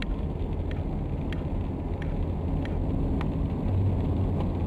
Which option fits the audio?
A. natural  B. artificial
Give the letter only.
A